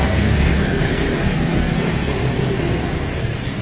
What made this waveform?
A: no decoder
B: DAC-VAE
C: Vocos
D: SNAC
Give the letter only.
D